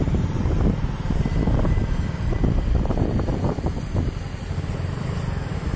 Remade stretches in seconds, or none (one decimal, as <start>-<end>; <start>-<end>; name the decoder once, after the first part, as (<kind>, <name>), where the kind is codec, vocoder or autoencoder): none